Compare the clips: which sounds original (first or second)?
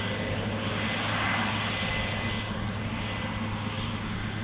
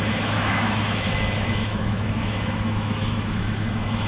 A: first